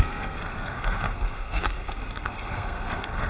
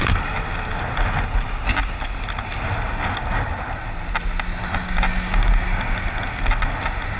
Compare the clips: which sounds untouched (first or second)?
second